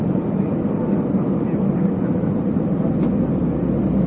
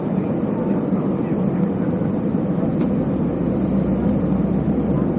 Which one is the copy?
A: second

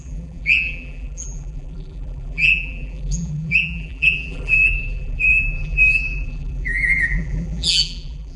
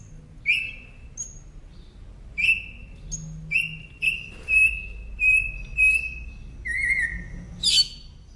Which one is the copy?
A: first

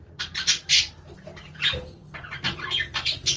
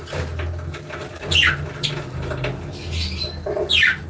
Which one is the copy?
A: first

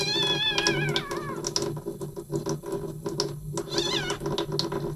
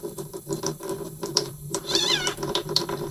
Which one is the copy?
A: second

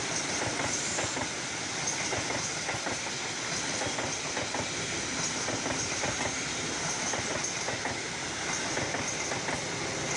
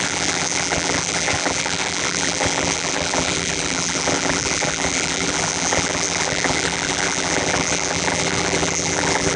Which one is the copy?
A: second